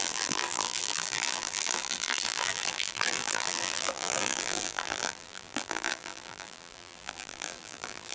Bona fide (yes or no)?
no